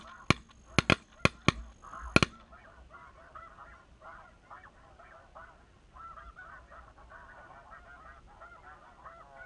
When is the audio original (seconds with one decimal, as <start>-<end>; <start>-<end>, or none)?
0.0-9.5